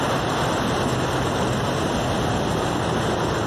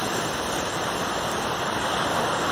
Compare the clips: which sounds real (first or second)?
first